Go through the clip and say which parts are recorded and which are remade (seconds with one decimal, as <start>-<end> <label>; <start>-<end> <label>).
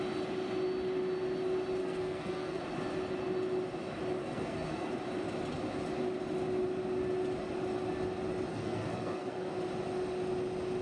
0.0-1.8 recorded; 1.8-2.6 remade; 2.6-4.2 recorded; 4.2-4.9 remade; 4.9-8.5 recorded; 8.5-9.5 remade; 9.5-10.8 recorded